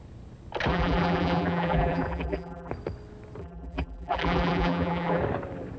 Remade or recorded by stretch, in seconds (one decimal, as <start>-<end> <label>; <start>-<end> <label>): 0.0-0.7 recorded; 0.7-2.7 remade; 2.7-3.4 recorded; 3.4-5.2 remade; 5.2-5.8 recorded